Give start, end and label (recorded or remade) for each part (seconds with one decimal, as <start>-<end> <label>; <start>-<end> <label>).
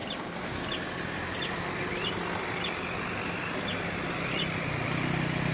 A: 0.0-5.5 recorded